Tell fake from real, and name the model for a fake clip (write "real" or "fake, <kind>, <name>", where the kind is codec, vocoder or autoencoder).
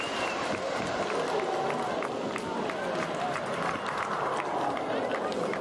real